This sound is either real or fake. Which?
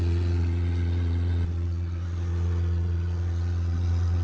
fake